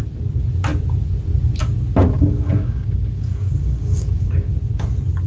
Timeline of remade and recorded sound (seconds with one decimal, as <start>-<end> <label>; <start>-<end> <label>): 0.0-2.0 recorded; 2.0-4.5 remade; 4.5-5.3 recorded